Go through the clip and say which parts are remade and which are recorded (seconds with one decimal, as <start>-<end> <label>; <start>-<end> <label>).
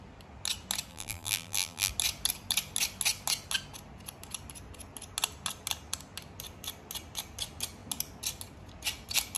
0.0-0.9 recorded; 0.9-1.9 remade; 1.9-9.4 recorded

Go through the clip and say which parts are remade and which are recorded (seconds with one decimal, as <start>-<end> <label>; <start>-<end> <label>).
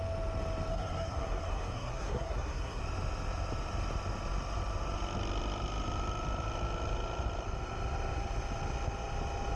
0.0-0.7 recorded; 0.7-2.8 remade; 2.8-9.6 recorded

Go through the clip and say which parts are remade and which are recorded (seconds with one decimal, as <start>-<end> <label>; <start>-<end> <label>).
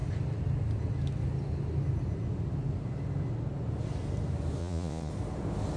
0.0-4.6 recorded; 4.6-5.1 remade; 5.1-5.8 recorded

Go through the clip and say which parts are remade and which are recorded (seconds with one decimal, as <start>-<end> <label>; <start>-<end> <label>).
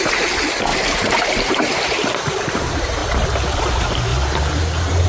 0.0-3.0 remade; 3.0-3.6 recorded; 3.6-4.1 remade; 4.1-4.6 recorded; 4.6-5.1 remade